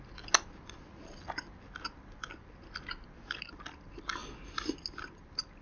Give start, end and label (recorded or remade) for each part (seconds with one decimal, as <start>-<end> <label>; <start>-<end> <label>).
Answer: 0.0-5.6 recorded